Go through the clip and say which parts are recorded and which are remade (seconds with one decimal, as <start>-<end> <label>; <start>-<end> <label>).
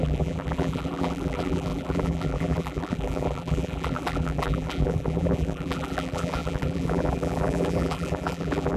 0.0-8.8 remade